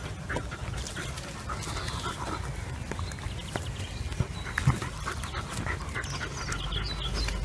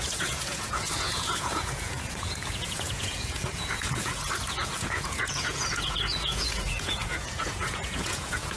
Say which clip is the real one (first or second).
first